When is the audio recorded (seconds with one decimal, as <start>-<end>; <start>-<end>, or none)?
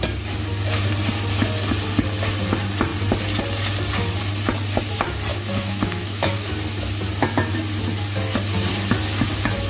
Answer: 0.0-5.3; 6.5-9.7